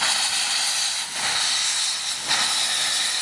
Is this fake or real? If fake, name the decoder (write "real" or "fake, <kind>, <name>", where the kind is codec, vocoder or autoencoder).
real